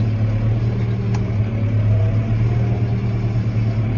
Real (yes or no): yes